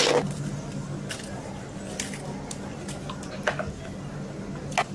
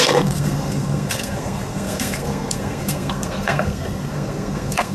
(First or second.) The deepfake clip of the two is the second